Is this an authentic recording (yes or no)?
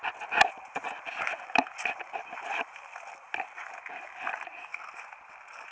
yes